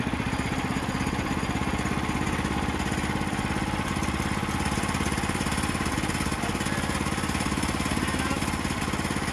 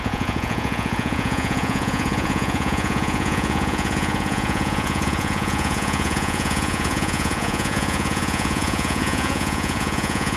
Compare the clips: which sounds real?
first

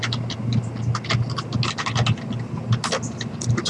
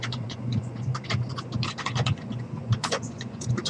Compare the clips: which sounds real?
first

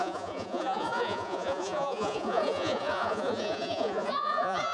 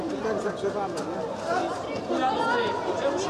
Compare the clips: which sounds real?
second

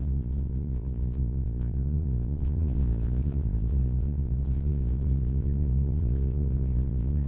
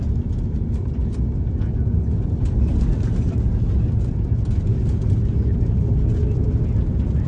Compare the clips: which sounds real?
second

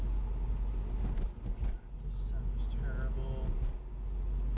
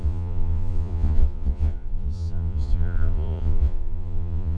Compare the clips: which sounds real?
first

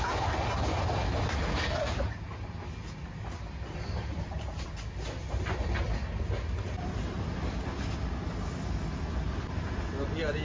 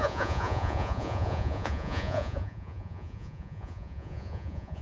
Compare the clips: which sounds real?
first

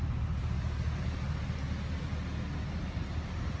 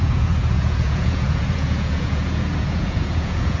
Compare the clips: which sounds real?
first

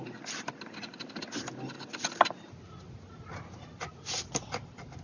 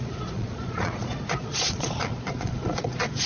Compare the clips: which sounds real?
first